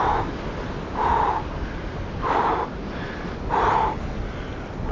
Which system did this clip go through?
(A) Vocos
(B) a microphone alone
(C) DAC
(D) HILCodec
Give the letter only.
B